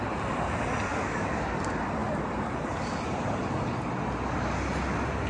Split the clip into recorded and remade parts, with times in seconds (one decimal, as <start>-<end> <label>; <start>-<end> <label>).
0.0-0.9 recorded; 0.9-1.5 remade; 1.5-5.3 recorded